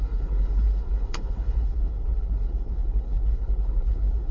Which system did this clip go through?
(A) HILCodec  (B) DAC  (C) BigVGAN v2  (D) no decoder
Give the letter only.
A